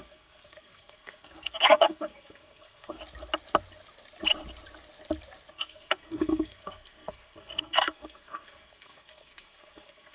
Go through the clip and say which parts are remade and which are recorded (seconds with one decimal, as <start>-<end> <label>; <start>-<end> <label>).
0.0-3.0 remade; 3.0-5.5 recorded; 5.5-10.1 remade